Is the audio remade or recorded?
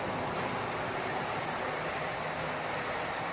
recorded